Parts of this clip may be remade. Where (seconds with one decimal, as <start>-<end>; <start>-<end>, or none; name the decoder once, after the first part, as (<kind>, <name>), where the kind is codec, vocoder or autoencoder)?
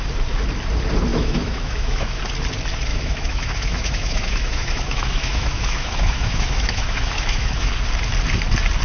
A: 1.1-2.2 (autoencoder, DAC-VAE); 2.9-7.7